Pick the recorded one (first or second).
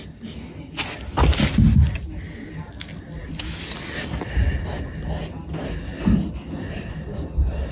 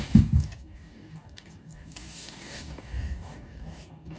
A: first